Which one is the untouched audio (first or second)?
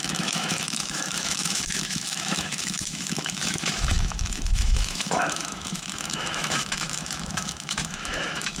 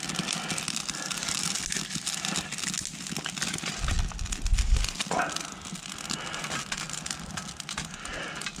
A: second